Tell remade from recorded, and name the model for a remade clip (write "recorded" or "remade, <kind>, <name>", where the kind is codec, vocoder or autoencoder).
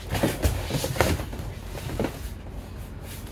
recorded